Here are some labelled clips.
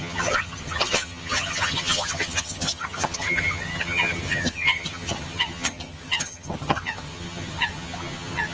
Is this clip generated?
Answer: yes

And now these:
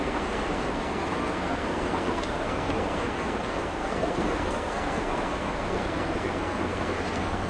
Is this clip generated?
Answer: yes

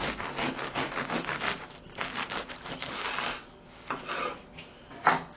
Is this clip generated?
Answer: no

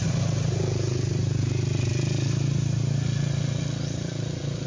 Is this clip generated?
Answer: no